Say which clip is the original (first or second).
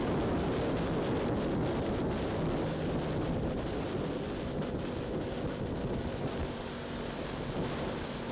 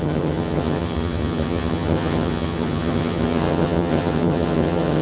first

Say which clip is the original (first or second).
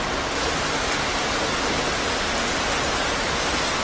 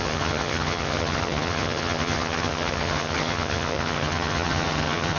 first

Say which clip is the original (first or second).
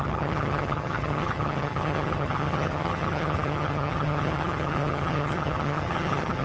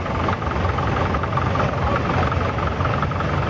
second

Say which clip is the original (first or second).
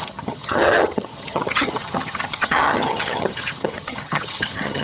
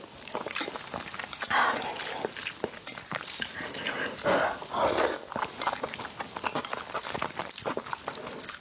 second